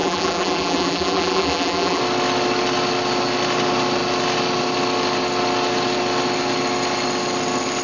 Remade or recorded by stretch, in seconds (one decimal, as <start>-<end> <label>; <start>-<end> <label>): 0.0-2.0 remade; 2.0-7.8 recorded